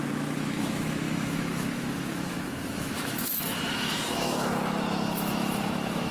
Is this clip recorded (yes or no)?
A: no